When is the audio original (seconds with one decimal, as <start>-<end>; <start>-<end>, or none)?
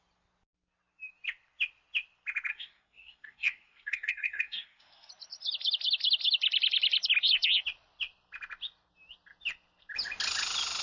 0.0-2.5; 5.1-10.8